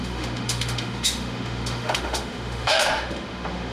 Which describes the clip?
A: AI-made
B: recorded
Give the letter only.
A